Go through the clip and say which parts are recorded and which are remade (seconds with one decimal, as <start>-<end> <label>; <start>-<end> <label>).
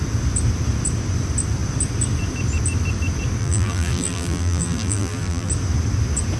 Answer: 0.0-3.4 recorded; 3.4-5.5 remade; 5.5-6.4 recorded